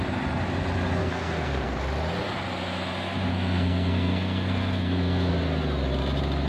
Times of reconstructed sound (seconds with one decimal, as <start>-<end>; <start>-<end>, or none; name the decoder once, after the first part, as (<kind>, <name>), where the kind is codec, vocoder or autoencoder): 1.0-1.8 (codec, SNAC); 3.3-5.3